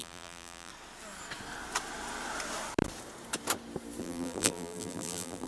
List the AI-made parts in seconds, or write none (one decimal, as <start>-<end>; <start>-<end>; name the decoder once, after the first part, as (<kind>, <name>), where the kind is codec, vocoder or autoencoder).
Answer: 0.0-0.7 (vocoder, BigVGAN v2); 4.0-5.5